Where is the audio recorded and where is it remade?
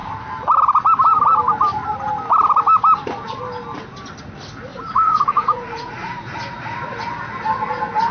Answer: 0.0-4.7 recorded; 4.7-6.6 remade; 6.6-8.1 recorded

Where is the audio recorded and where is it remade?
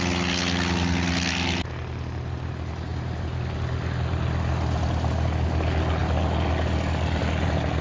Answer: 0.0-7.8 recorded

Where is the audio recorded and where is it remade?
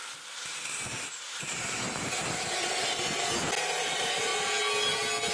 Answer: 0.0-5.3 recorded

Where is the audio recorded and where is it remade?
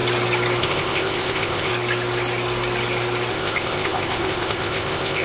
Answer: 0.0-0.6 recorded; 0.6-1.7 remade; 1.7-3.3 recorded; 3.3-5.2 remade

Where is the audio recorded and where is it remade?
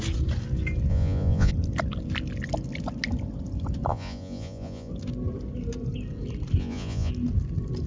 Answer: 0.0-0.9 recorded; 0.9-1.5 remade; 1.5-3.9 recorded; 3.9-4.9 remade; 4.9-6.6 recorded; 6.6-7.1 remade; 7.1-7.9 recorded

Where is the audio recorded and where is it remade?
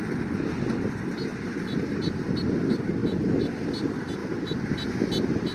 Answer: 0.0-5.5 recorded